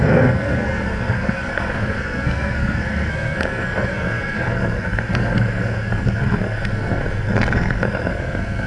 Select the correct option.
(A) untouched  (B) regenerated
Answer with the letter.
B